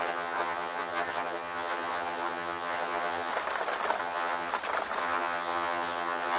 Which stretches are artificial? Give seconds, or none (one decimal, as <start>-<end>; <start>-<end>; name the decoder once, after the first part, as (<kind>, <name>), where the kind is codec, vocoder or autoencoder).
0.0-3.3 (vocoder, HiFi-GAN); 4.0-4.5; 5.0-6.4